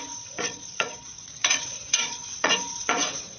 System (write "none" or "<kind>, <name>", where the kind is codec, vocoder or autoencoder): vocoder, Vocos